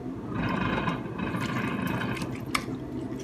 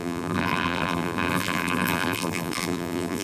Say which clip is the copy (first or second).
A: second